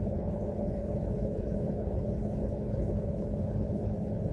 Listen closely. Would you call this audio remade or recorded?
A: remade